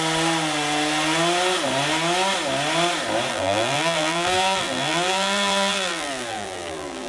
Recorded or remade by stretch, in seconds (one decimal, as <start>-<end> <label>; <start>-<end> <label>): 0.0-3.3 recorded; 3.3-7.1 remade